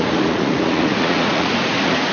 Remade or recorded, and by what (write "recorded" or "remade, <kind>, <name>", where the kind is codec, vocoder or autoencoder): remade, vocoder, Vocos